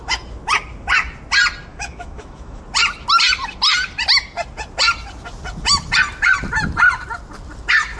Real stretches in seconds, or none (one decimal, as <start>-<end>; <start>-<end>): 0.0-1.7; 2.6-8.0